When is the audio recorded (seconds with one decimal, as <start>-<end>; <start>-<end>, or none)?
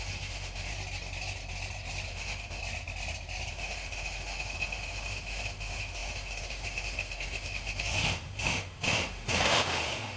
0.7-2.1; 2.6-3.5